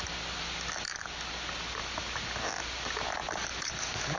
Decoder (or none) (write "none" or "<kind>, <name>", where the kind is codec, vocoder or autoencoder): none